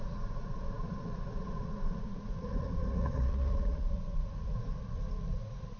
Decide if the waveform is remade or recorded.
remade